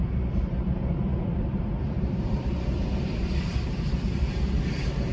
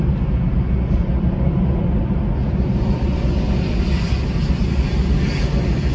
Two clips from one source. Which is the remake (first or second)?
first